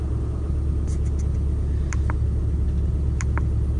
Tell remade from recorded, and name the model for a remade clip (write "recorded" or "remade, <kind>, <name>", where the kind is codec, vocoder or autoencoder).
recorded